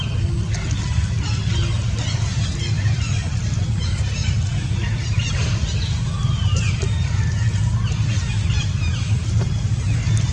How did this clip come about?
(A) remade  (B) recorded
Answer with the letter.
B